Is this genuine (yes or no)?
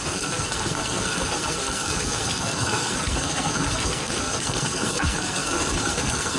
no